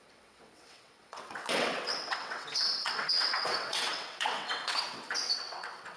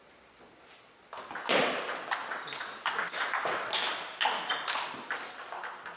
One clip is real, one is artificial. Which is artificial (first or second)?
first